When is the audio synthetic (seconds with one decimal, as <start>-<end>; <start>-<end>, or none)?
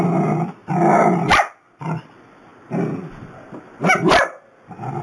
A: none